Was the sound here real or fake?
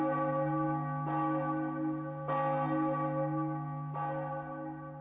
real